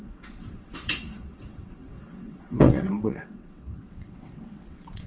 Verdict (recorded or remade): remade